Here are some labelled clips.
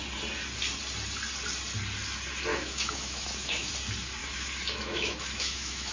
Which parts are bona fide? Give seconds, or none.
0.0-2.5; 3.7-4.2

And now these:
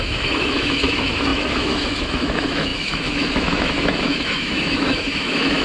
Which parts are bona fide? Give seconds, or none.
none

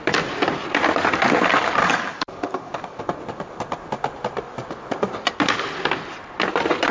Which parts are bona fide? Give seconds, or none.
0.0-1.8; 3.0-6.9

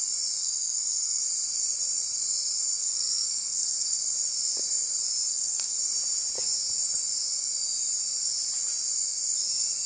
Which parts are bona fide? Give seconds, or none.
0.0-0.4; 1.2-2.8; 4.0-5.3; 5.8-9.9

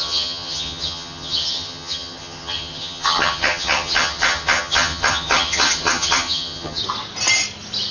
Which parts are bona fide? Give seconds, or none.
6.8-7.9